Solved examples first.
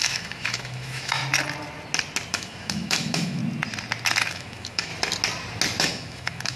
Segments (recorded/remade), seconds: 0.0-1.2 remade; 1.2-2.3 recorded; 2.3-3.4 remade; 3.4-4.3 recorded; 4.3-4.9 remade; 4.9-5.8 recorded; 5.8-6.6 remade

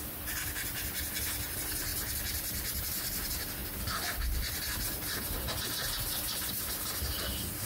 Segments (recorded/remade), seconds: 0.0-7.7 recorded

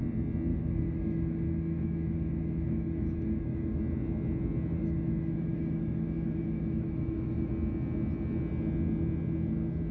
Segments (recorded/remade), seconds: 0.0-0.5 recorded; 0.5-3.8 remade; 3.8-4.8 recorded; 4.8-7.5 remade; 7.5-9.9 recorded

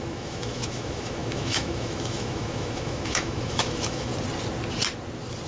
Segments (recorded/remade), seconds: 0.0-4.1 remade; 4.1-5.5 recorded

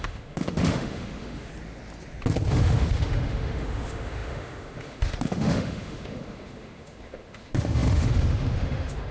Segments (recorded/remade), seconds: 0.0-1.5 remade; 1.5-2.5 recorded; 2.5-9.1 remade

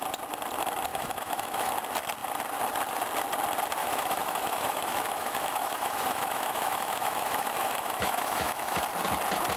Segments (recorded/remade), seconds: 0.0-0.9 recorded; 0.9-1.7 remade; 1.7-3.8 recorded; 3.8-8.8 remade; 8.8-9.6 recorded